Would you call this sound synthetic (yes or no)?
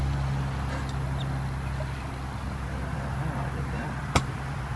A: no